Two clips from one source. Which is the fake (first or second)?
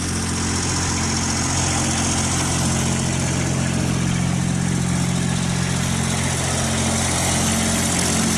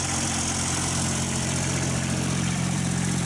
second